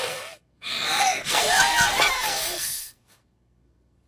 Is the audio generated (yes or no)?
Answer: yes